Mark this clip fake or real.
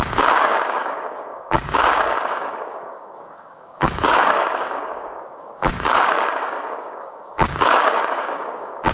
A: fake